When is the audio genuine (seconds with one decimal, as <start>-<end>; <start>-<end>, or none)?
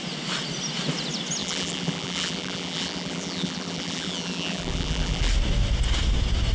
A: 0.0-1.4; 5.3-6.5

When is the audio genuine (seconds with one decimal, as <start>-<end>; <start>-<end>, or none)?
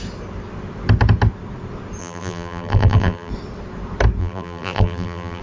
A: 0.0-2.0; 3.3-4.2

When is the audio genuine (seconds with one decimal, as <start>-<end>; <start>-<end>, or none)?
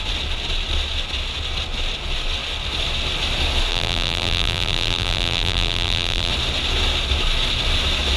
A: 0.0-3.7; 6.3-8.2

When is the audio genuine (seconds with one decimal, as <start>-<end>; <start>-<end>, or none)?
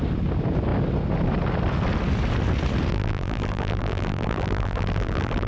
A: 0.0-2.9